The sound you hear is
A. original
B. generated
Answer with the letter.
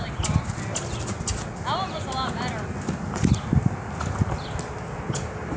A